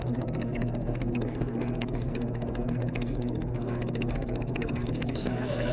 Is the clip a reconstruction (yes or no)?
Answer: yes